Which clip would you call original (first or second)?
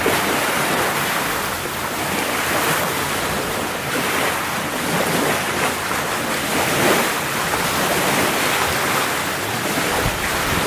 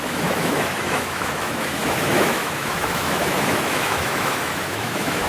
first